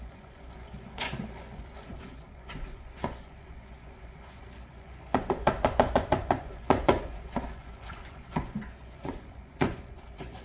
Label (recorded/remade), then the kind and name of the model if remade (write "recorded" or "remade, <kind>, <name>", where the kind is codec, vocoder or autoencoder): remade, vocoder, Vocos